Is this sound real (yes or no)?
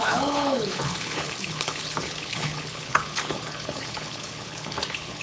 no